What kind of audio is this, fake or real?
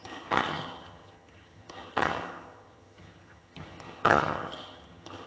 fake